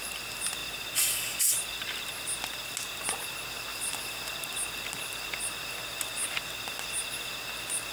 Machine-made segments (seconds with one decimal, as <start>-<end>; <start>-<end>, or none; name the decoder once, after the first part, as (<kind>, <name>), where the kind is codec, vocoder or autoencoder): 3.7-4.2 (vocoder, BigVGAN v2)